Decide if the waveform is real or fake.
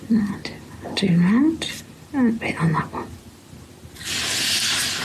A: real